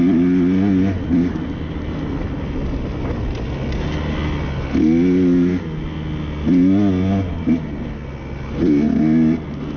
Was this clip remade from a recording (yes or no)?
no